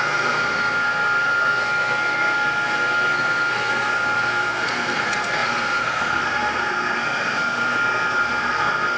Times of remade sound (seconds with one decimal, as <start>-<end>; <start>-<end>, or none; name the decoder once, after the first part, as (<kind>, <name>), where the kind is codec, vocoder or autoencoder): 0.0-9.0 (codec, SNAC)